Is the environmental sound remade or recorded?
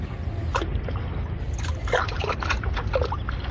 recorded